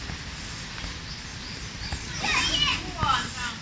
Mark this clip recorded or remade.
recorded